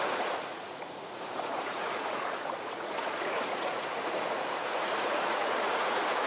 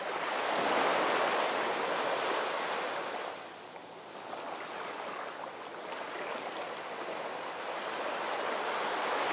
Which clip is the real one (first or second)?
second